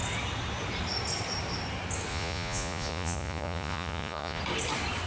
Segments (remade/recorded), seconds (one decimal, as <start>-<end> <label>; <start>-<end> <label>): 0.0-2.1 recorded; 2.1-4.4 remade; 4.4-5.1 recorded